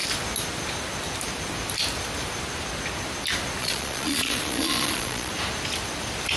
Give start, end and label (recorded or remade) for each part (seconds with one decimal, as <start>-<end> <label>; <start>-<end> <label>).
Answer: 0.0-3.6 recorded; 3.6-5.3 remade; 5.3-6.4 recorded